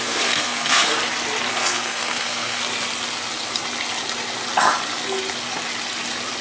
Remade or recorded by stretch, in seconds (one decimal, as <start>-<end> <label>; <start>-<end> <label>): 0.0-0.9 remade; 0.9-1.5 recorded; 1.5-2.6 remade; 2.6-6.4 recorded